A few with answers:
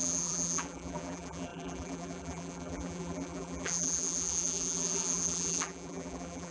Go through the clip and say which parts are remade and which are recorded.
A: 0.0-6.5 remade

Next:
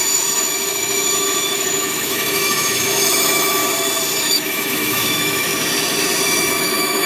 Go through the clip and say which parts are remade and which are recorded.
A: 0.0-3.6 remade; 3.6-4.2 recorded; 4.2-5.5 remade; 5.5-6.6 recorded; 6.6-7.1 remade

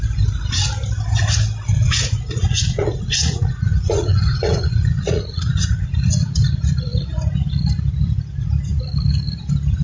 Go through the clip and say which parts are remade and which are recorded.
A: 0.0-1.8 recorded; 1.8-6.4 remade; 6.4-9.8 recorded